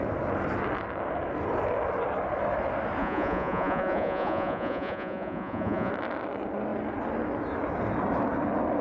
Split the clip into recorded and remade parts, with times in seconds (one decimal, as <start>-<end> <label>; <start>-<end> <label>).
0.0-3.0 recorded; 3.0-5.9 remade; 5.9-8.8 recorded